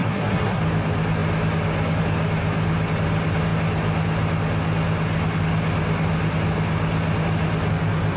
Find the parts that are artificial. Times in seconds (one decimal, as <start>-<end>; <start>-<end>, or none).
0.0-0.6

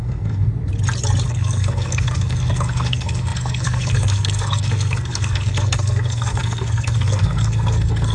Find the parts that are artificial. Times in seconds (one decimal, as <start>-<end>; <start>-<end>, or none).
0.0-0.5; 1.3-8.1

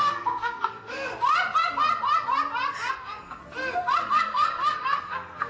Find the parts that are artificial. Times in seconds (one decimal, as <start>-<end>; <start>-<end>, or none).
0.0-1.1; 2.9-3.4; 4.0-5.5

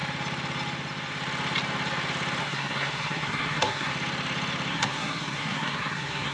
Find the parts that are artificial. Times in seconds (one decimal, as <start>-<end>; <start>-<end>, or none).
2.4-3.9; 4.7-6.3

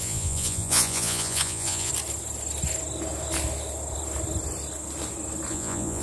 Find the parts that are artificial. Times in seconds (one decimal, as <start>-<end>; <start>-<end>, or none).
0.0-1.9; 5.5-6.0